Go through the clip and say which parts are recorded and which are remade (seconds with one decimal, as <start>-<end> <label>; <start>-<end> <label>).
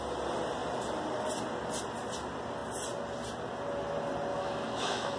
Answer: 0.0-4.3 recorded; 4.3-5.2 remade